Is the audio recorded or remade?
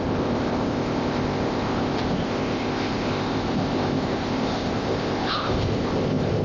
remade